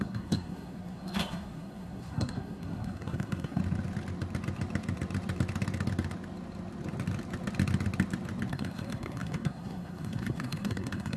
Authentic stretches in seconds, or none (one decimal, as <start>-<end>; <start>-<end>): 3.6-8.5

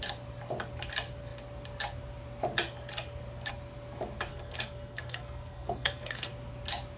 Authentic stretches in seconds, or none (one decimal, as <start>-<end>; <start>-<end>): 0.0-4.3; 6.3-7.0

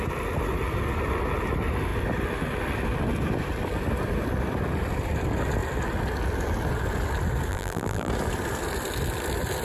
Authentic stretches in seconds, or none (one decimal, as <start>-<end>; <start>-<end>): 0.0-7.5; 8.1-9.6

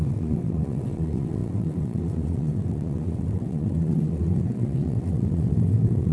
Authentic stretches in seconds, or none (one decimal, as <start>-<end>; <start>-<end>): none

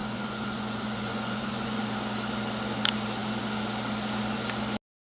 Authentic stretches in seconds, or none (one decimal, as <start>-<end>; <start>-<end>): 1.8-5.0

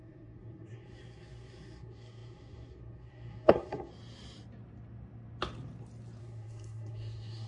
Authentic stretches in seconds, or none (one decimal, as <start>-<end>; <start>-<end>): 3.9-6.2

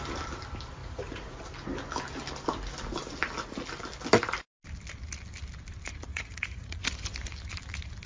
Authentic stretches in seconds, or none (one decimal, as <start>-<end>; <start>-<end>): 0.0-0.8; 1.4-6.1; 6.8-8.1

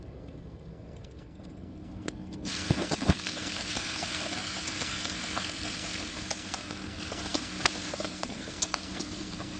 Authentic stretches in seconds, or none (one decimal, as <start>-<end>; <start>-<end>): none